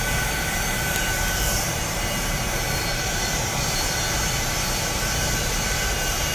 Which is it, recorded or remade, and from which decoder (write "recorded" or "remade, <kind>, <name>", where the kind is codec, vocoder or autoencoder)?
remade, vocoder, BigVGAN v2